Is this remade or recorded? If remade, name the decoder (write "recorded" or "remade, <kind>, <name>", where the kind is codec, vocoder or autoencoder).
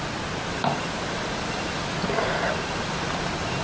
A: recorded